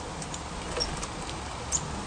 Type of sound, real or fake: real